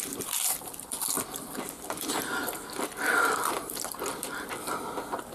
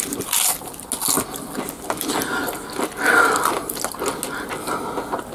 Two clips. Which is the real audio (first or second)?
second